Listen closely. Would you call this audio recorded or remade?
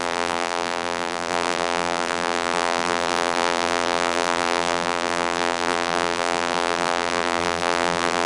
remade